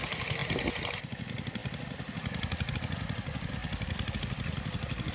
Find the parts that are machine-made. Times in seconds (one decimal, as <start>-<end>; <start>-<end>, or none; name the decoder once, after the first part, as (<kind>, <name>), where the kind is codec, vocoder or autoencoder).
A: none